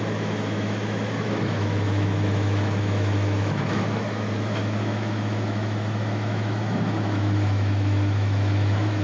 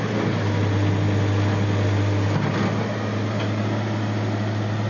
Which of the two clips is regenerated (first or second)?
first